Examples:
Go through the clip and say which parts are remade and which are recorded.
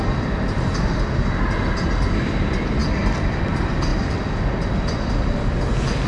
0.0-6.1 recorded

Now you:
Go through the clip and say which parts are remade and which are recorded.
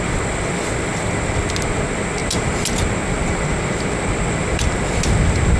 0.0-5.6 recorded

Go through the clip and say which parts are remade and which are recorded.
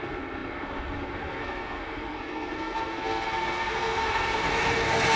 0.0-5.2 remade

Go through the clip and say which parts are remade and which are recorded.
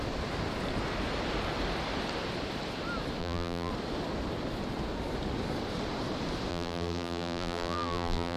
0.0-3.2 recorded; 3.2-3.7 remade; 3.7-6.5 recorded; 6.5-8.4 remade